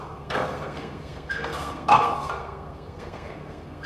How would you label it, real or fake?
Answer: fake